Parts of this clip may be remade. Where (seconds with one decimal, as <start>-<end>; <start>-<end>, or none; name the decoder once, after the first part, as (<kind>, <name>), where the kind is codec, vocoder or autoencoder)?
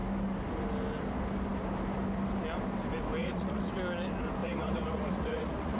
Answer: 3.2-3.7 (vocoder, Vocos); 4.4-5.8